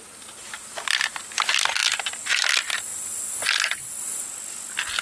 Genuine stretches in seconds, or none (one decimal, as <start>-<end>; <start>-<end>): 0.0-5.0